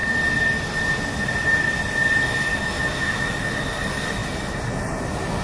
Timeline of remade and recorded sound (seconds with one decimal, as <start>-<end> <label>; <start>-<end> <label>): 0.0-2.5 recorded; 2.5-3.3 remade; 3.3-5.4 recorded